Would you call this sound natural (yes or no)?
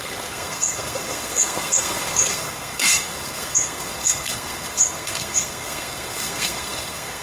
no